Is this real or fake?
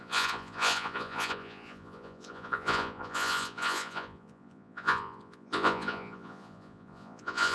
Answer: fake